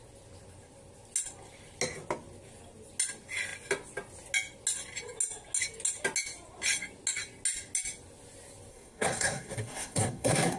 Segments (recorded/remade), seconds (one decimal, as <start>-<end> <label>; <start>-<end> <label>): 0.0-8.7 recorded; 8.7-10.6 remade